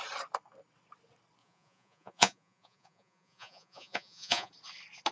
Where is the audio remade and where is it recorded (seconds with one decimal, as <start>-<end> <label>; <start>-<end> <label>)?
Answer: 0.0-1.4 recorded; 1.4-4.5 remade; 4.5-5.1 recorded